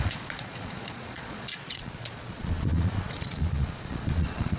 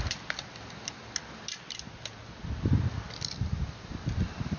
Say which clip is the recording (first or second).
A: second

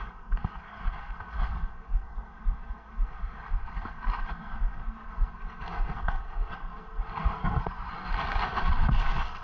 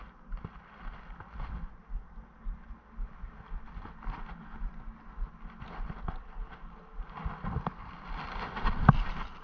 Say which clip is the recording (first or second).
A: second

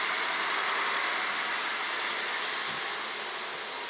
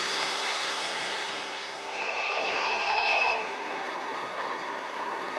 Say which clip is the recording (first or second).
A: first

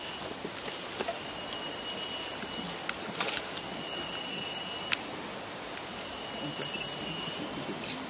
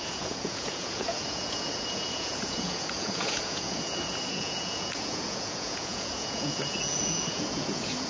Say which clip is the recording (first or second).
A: first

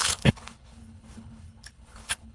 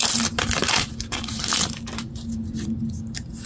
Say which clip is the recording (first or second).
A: second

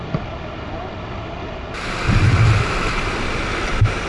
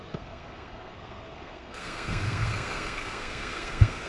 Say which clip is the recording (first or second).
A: first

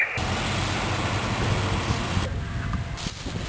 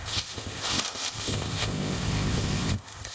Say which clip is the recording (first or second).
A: first